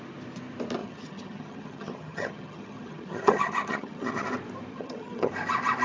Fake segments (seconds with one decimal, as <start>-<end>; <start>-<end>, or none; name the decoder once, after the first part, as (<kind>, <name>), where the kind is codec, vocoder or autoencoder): 0.8-4.3 (vocoder, HiFi-GAN); 4.7-5.3